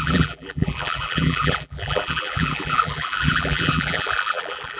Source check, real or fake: fake